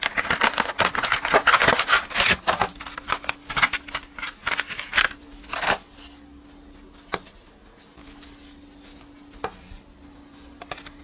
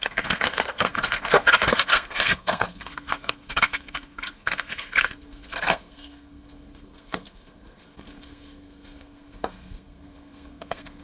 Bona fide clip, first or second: first